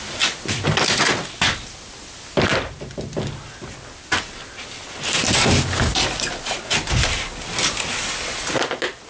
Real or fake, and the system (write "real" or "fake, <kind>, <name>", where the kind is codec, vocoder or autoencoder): real